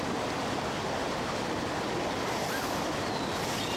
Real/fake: real